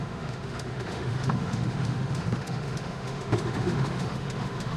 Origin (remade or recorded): remade